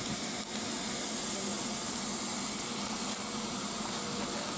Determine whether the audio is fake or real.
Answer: real